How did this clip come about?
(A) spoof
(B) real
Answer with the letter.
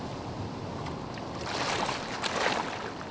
B